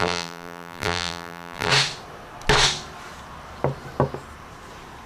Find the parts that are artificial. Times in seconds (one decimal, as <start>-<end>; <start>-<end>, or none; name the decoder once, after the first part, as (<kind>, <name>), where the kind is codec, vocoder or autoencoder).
0.0-1.7 (vocoder, BigVGAN v2)